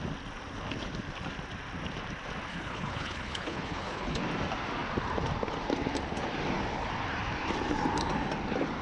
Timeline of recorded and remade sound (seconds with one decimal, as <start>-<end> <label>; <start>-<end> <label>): 0.0-2.5 recorded; 2.5-4.2 remade; 4.2-8.8 recorded